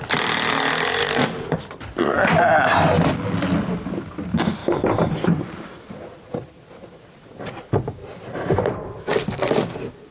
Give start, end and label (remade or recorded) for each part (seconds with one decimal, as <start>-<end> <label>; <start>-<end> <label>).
0.0-1.0 recorded; 1.0-1.6 remade; 1.6-4.6 recorded; 4.6-5.8 remade; 5.8-8.0 recorded; 8.0-9.0 remade; 9.0-10.1 recorded